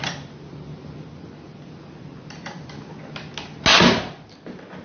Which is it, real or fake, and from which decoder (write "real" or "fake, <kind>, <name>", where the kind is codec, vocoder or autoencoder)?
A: real